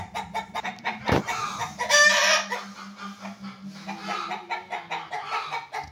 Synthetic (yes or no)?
no